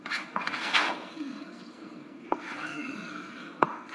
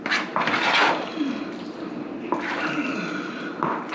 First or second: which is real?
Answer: second